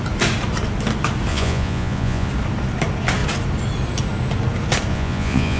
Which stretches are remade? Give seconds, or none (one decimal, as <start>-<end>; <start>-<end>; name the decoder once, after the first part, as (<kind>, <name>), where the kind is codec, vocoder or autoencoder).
1.3-2.3 (vocoder, Vocos); 4.9-5.6